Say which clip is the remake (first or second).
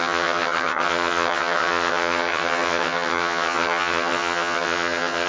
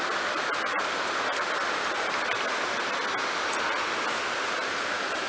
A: first